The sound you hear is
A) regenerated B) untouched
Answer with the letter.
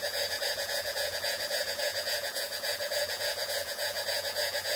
A